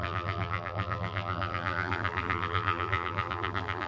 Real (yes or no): no